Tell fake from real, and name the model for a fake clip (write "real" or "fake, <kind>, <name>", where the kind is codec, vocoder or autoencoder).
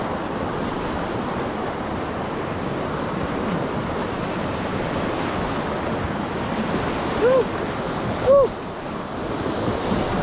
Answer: real